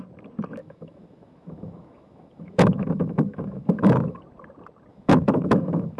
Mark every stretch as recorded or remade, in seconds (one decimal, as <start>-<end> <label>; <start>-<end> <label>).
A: 0.0-0.6 recorded; 0.6-4.2 remade; 4.2-4.9 recorded; 4.9-6.0 remade